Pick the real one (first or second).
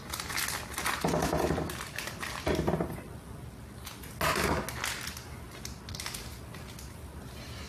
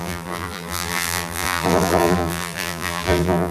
first